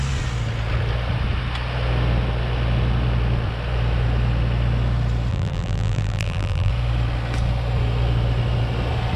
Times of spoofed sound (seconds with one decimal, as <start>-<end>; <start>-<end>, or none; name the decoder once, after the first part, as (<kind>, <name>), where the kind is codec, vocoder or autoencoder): 5.3-6.7 (vocoder, BigVGAN v2)